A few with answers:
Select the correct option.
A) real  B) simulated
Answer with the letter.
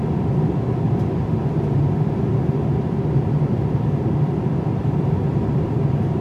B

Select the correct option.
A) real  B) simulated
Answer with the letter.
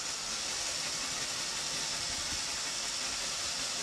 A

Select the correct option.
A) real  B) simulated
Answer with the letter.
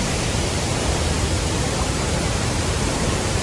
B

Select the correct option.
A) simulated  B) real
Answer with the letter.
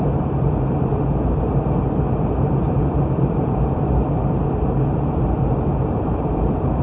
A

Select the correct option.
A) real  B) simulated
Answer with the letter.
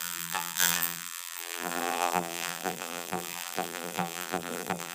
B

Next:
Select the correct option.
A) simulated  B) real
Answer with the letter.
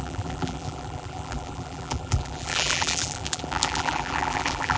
A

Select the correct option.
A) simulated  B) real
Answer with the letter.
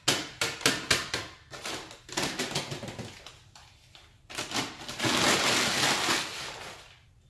B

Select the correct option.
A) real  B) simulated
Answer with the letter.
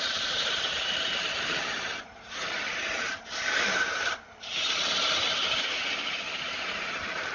B